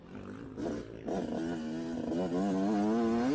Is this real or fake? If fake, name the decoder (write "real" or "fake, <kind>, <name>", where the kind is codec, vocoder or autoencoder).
real